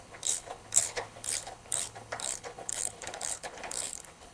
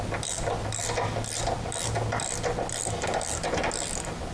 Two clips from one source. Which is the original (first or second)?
second